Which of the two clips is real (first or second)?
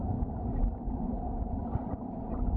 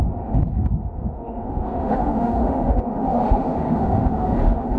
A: first